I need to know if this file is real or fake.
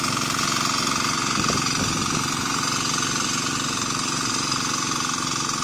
real